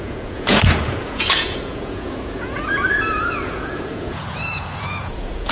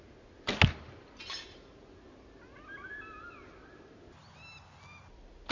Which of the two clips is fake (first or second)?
first